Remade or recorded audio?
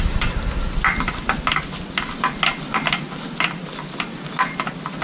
recorded